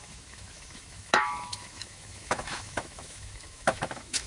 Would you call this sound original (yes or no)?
no